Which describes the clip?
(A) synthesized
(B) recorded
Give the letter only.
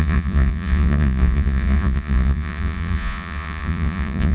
A